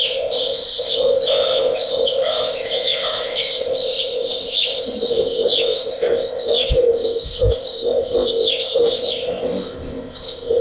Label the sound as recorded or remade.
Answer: remade